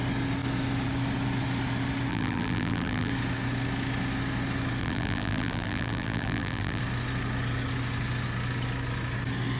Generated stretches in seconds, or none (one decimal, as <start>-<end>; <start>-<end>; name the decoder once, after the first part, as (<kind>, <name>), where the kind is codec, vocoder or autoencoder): 2.1-3.1 (vocoder, BigVGAN v2); 4.8-6.8